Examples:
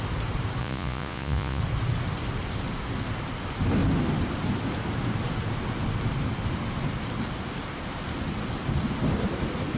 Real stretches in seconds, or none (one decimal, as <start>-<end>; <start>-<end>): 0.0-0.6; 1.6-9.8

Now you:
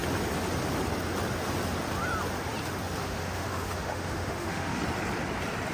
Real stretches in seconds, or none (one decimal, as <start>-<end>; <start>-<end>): 0.0-3.0; 4.8-5.7

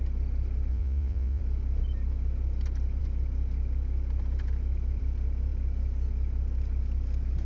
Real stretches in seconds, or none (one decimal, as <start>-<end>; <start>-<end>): 0.0-0.7; 1.4-7.5

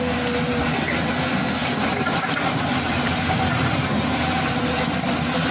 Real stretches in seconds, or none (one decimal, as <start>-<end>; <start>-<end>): 0.0-1.6; 4.9-5.5

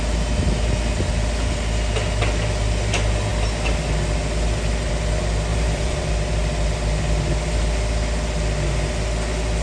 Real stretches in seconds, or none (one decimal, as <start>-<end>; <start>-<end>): 0.0-5.5; 6.1-9.6